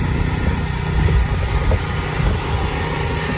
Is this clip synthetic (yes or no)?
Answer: no